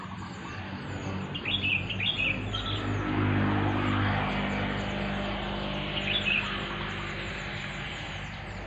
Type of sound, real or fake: real